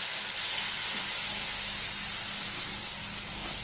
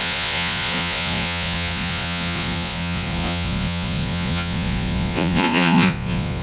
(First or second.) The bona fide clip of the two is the first